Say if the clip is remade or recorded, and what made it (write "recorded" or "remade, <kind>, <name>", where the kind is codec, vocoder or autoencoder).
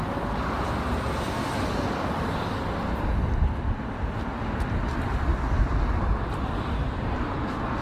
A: remade, vocoder, BigVGAN v2